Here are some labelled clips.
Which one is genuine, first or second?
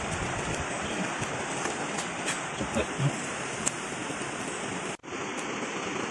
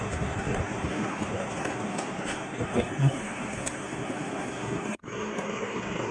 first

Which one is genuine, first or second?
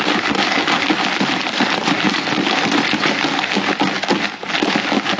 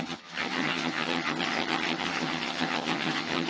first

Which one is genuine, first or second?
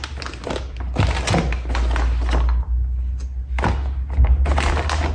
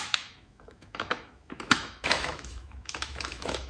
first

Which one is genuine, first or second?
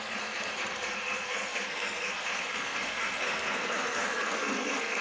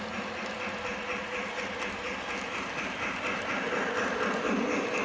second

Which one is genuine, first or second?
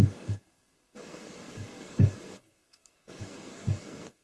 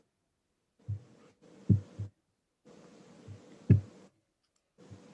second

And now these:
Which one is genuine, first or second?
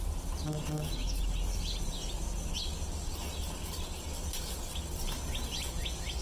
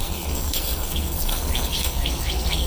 first